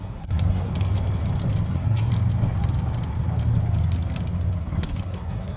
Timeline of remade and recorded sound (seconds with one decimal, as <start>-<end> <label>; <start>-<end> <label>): 0.0-0.7 remade; 0.7-1.7 recorded; 1.7-2.1 remade; 2.1-4.6 recorded; 4.6-5.6 remade